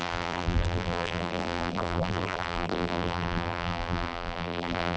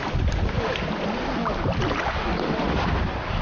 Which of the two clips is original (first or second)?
second